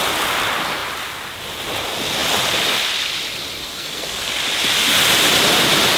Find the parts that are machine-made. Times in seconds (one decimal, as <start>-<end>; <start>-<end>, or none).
3.6-4.3